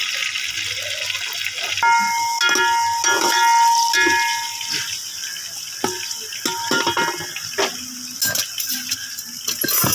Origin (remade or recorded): recorded